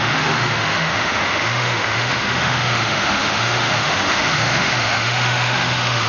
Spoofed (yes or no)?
yes